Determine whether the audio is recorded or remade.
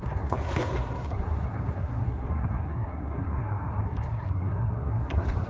remade